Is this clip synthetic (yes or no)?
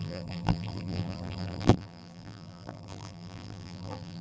yes